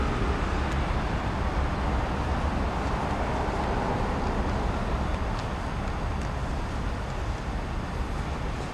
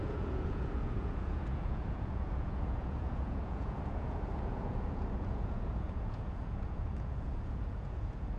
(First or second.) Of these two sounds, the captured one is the first